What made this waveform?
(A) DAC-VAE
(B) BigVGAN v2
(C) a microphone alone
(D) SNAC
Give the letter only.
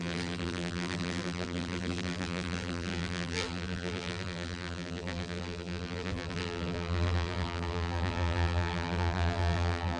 B